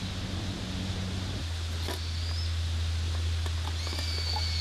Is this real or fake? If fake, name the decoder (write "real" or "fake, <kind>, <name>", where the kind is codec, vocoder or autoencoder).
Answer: real